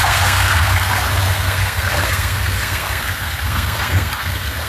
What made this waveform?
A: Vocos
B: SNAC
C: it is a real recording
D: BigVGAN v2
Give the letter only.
B